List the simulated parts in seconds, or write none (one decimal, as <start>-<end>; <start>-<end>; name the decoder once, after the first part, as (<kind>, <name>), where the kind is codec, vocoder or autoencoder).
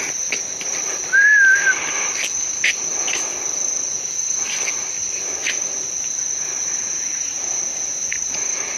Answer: none